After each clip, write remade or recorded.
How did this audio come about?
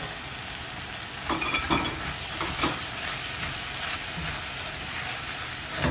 recorded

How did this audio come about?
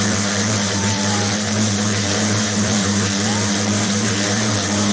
remade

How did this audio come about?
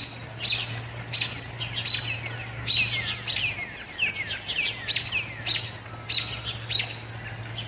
recorded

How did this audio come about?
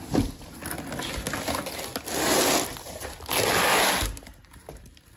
recorded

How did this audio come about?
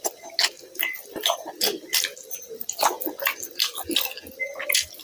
recorded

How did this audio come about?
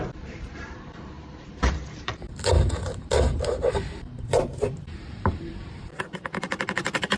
remade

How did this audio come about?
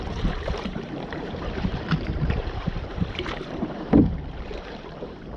remade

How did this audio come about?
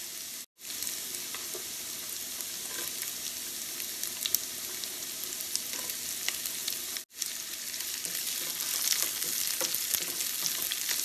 recorded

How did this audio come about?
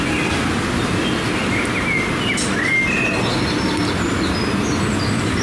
recorded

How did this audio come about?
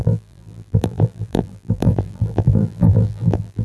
remade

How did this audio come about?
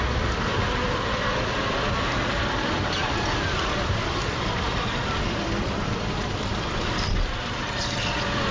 remade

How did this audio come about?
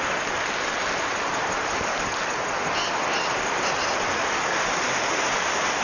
recorded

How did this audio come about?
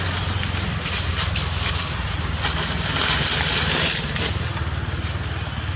remade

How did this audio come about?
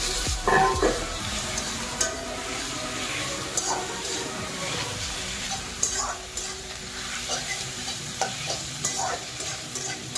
remade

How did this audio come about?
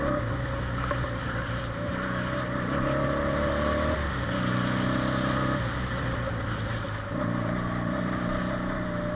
recorded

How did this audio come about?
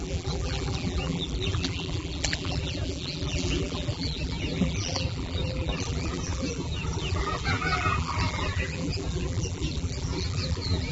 remade